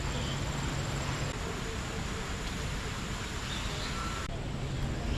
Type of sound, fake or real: real